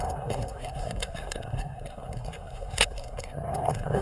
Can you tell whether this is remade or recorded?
remade